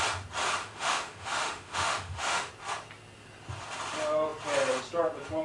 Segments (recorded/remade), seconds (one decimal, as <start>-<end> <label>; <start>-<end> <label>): 0.0-0.6 recorded; 0.6-2.5 remade; 2.5-5.4 recorded